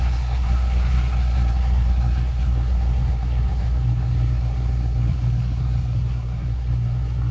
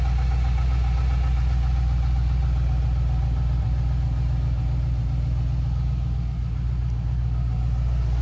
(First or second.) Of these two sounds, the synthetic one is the first